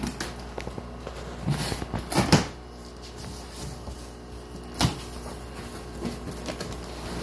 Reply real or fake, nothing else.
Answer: real